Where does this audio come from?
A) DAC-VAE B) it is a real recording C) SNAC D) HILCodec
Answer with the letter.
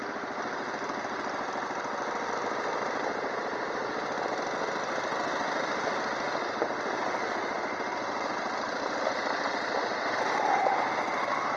B